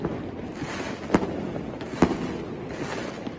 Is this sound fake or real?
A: real